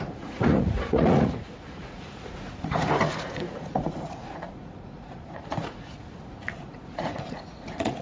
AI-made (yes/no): yes